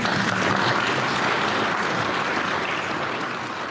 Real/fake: real